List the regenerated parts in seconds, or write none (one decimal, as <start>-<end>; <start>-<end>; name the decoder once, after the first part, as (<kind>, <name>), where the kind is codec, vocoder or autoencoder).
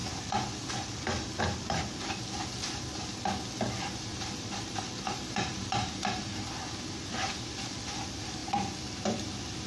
4.1-6.4 (vocoder, BigVGAN v2)